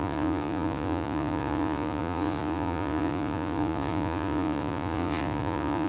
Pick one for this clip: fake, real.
fake